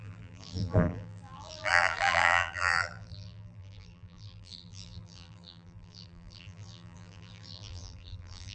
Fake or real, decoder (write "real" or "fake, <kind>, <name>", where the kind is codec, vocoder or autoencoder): fake, vocoder, BigVGAN v2